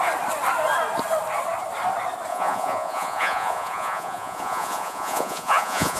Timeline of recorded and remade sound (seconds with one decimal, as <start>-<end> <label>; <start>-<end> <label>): 0.0-2.3 recorded; 2.3-6.0 remade